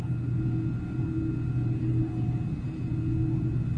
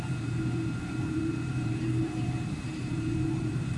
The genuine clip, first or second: first